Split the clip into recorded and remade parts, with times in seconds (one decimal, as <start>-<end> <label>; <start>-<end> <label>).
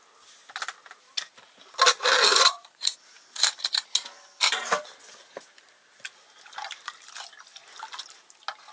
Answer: 0.0-2.3 recorded; 2.3-3.4 remade; 3.4-8.7 recorded